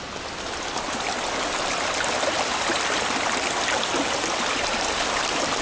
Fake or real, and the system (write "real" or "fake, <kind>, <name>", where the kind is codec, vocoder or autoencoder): real